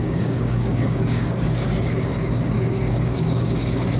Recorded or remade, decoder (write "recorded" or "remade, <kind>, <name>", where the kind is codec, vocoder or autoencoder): remade, codec, DAC